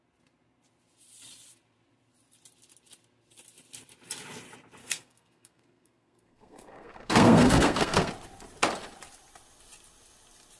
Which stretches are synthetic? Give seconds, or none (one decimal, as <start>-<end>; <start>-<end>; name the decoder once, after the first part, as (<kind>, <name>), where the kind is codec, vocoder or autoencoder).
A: 4.8-8.1 (codec, SNAC)